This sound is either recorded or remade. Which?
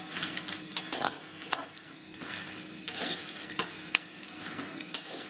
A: remade